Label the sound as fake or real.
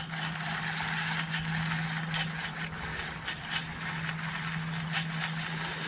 real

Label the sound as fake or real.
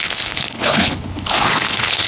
fake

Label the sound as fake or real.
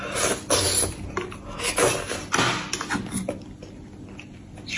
real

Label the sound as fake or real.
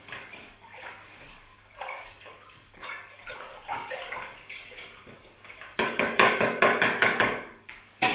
fake